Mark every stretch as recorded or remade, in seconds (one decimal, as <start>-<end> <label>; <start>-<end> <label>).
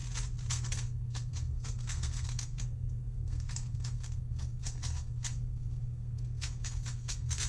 0.0-0.5 recorded; 0.5-7.5 remade